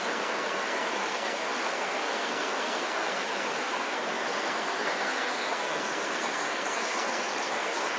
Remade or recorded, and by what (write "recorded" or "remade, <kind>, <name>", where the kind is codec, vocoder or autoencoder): remade, codec, SNAC